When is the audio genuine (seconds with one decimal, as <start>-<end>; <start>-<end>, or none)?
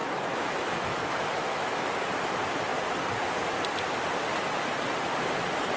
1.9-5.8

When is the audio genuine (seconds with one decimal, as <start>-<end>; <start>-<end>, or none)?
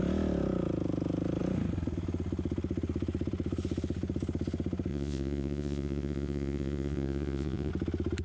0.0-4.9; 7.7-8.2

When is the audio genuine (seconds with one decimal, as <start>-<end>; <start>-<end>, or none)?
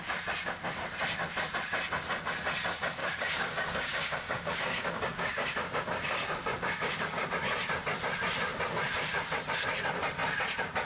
0.0-3.0; 7.3-10.9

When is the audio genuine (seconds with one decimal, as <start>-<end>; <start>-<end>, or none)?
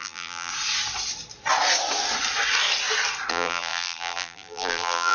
0.5-3.3